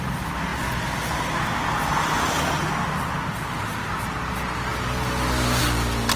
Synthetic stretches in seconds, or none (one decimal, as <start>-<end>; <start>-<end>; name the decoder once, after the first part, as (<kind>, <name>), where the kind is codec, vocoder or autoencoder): none